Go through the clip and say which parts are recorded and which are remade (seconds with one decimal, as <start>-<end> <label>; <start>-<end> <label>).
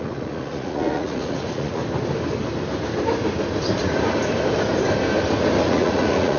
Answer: 0.0-1.8 remade; 1.8-5.6 recorded; 5.6-6.4 remade